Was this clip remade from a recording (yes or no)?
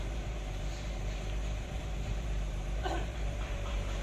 yes